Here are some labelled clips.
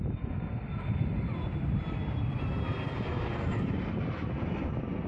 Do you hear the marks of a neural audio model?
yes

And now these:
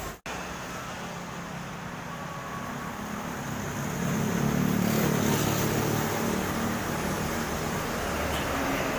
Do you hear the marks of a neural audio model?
no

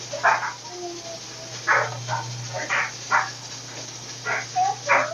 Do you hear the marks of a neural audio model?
no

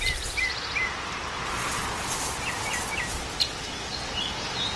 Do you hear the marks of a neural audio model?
no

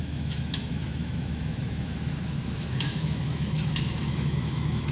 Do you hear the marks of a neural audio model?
yes